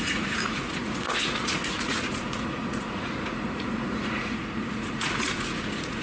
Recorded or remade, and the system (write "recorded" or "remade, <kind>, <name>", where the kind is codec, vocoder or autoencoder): remade, vocoder, Vocos